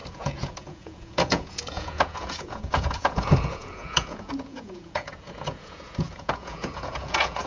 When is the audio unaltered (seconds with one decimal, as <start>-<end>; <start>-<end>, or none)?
none